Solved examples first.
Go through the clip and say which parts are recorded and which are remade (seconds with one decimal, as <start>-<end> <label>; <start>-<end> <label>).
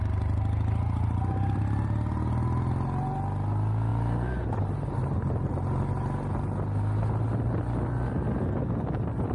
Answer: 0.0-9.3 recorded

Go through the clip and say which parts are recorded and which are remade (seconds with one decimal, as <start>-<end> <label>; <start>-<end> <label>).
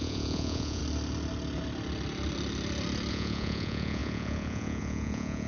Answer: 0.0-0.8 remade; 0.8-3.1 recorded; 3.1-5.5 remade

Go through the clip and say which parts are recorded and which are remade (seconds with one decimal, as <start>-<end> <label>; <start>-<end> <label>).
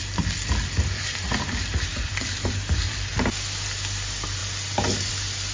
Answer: 0.0-1.9 recorded; 1.9-3.1 remade; 3.1-5.5 recorded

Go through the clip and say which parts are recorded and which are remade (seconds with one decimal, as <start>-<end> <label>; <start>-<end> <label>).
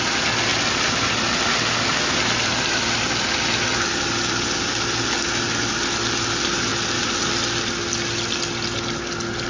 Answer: 0.0-9.5 recorded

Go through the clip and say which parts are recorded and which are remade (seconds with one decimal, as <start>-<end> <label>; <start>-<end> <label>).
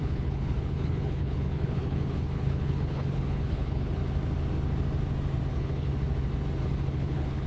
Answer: 0.0-4.0 remade; 4.0-5.5 recorded; 5.5-5.9 remade; 5.9-6.6 recorded; 6.6-7.5 remade